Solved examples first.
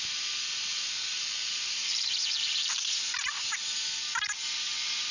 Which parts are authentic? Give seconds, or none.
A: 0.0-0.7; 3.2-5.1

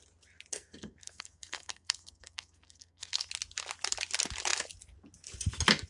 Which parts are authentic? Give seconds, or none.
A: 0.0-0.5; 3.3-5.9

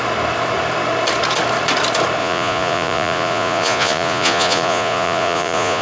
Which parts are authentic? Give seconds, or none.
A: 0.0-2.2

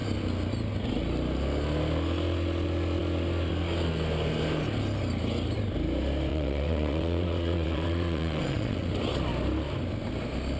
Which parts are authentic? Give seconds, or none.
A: 0.0-6.3; 8.9-10.6

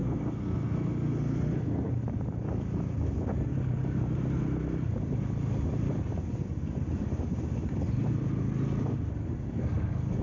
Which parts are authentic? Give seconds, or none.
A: 1.9-9.2

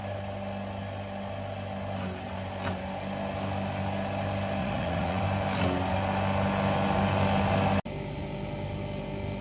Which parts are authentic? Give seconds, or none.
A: 0.0-4.6; 5.2-9.4

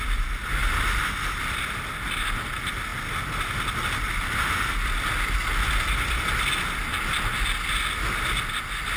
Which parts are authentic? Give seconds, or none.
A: 0.0-9.0